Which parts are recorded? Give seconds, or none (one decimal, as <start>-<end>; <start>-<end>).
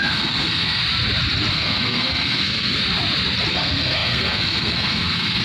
0.8-1.5; 2.8-3.5